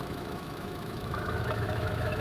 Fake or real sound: fake